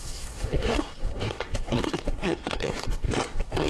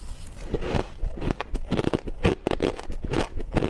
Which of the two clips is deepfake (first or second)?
first